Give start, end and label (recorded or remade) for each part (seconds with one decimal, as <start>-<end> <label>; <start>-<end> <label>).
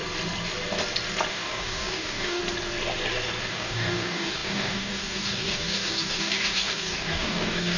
0.0-1.3 recorded; 1.3-2.4 remade; 2.4-3.5 recorded; 3.5-7.8 remade